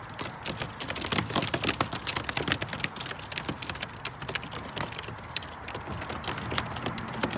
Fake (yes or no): no